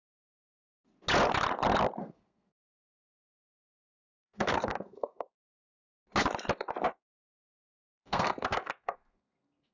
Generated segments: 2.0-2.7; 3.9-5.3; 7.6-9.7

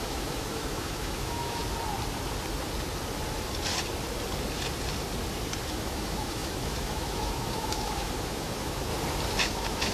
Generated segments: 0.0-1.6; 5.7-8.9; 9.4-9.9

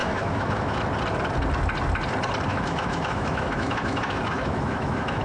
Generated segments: 0.0-0.8; 2.5-5.2